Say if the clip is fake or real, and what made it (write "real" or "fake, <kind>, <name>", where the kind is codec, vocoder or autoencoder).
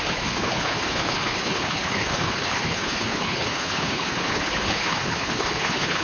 fake, codec, HILCodec